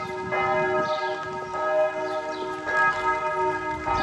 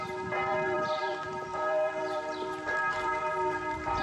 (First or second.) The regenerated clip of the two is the second